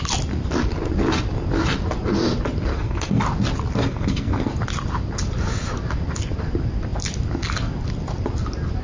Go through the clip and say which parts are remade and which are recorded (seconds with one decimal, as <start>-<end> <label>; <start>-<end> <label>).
0.0-2.7 recorded; 2.7-3.2 remade; 3.2-3.8 recorded; 3.8-4.5 remade; 4.5-8.8 recorded

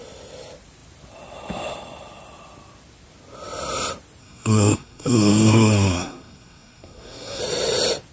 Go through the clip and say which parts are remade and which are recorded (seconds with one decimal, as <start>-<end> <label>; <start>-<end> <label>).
0.0-4.2 recorded; 4.2-7.4 remade; 7.4-8.1 recorded

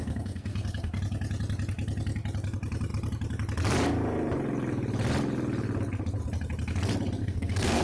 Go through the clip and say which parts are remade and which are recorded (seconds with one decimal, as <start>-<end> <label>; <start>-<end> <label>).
0.0-1.0 remade; 1.0-7.2 recorded; 7.2-7.8 remade

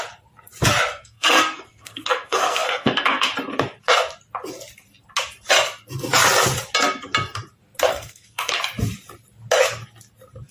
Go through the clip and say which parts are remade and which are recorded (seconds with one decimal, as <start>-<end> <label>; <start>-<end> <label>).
0.0-0.9 recorded; 0.9-3.3 remade; 3.3-7.9 recorded; 7.9-8.5 remade; 8.5-10.5 recorded